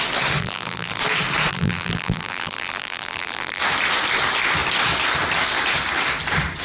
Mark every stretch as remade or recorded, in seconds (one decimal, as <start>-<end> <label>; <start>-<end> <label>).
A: 0.0-0.4 recorded; 0.4-1.0 remade; 1.0-1.5 recorded; 1.5-3.6 remade; 3.6-6.6 recorded